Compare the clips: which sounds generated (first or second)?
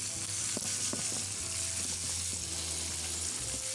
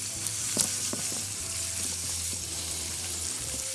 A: second